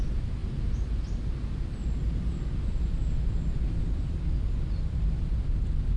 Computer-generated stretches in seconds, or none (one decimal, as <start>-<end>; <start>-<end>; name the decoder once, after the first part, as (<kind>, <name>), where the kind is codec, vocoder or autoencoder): none